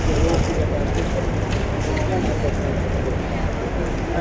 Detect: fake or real real